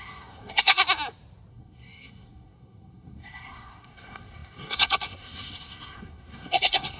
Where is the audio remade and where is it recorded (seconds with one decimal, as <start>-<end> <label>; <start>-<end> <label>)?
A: 0.0-0.8 remade; 0.8-1.5 recorded; 1.5-7.0 remade